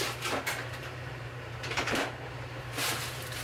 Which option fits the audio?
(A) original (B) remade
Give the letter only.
B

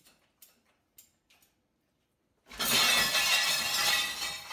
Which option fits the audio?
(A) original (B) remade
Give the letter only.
A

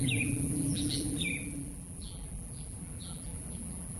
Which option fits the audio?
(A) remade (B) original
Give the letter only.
A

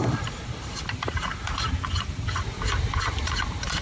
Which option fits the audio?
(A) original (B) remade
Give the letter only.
B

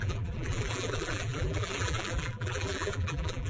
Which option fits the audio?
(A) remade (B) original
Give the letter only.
A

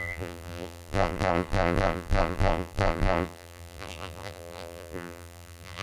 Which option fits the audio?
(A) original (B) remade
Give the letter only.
B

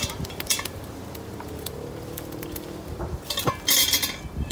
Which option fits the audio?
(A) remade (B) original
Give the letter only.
A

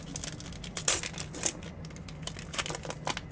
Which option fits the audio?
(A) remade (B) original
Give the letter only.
B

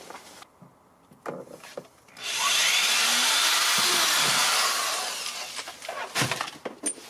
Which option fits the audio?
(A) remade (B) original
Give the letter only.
B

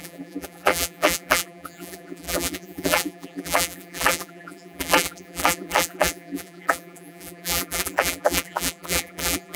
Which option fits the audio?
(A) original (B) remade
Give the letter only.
B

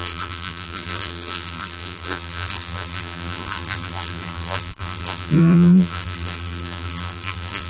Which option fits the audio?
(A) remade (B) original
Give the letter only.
A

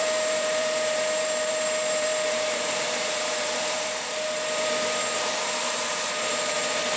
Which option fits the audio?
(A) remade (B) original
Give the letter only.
A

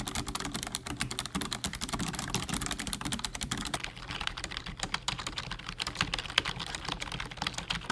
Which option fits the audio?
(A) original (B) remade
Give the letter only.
B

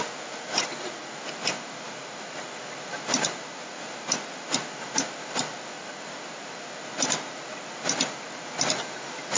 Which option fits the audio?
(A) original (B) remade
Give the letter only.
A